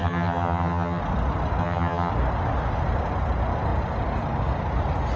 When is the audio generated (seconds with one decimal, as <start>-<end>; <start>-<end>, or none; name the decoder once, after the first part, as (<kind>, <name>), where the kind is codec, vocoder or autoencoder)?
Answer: 0.0-1.0 (vocoder, HiFi-GAN); 1.6-2.1